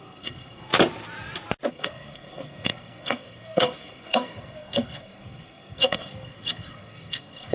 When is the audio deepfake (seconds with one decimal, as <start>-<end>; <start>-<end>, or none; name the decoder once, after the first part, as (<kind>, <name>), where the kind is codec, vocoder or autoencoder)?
0.0-0.7 (codec, SNAC); 1.7-7.5